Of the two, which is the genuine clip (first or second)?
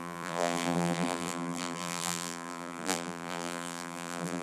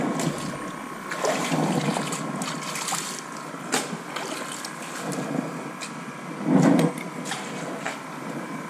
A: second